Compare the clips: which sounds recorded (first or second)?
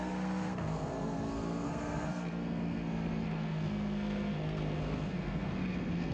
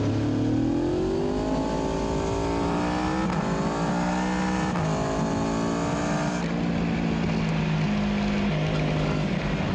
second